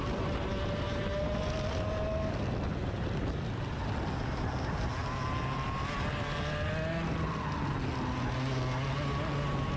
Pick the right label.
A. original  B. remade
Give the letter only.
A